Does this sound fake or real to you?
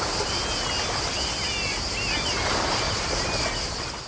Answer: real